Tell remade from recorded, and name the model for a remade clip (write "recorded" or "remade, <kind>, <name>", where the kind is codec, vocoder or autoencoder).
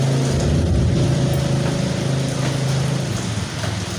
recorded